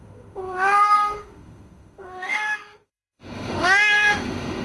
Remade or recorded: remade